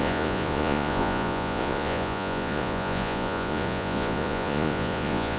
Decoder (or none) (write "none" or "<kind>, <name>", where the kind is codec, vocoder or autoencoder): vocoder, Vocos